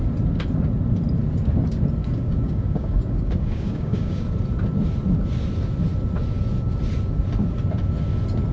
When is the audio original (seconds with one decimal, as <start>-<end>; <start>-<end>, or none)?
0.0-2.0; 4.2-8.5